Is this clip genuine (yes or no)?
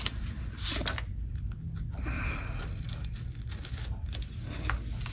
yes